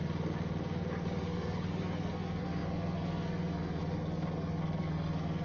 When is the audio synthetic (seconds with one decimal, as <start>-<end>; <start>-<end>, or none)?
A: 1.2-5.4